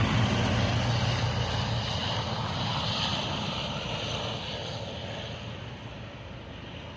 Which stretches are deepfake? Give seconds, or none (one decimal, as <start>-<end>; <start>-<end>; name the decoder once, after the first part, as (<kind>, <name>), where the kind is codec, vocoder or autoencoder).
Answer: 2.0-4.0 (vocoder, BigVGAN v2)